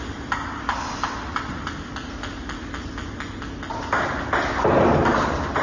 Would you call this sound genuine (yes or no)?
yes